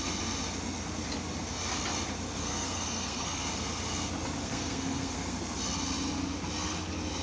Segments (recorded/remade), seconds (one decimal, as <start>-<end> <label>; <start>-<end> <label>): 0.0-2.4 recorded; 2.4-3.4 remade; 3.4-4.4 recorded; 4.4-5.4 remade; 5.4-7.2 recorded